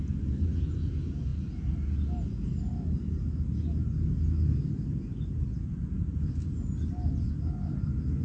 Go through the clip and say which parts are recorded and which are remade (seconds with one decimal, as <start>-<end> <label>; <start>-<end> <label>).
0.0-8.2 recorded